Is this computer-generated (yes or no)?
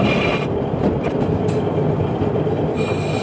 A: no